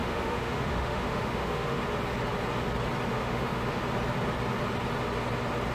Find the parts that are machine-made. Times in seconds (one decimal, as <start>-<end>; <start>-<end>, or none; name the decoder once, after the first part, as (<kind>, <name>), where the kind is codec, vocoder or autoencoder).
0.0-1.8 (autoencoder, DAC-VAE); 3.1-3.8